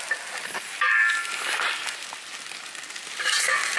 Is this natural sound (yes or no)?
yes